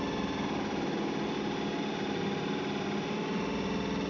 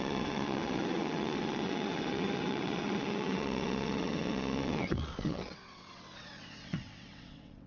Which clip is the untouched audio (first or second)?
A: first